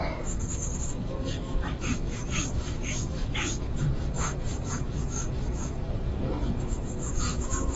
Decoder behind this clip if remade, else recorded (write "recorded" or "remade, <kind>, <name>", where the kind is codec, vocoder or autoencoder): remade, codec, DAC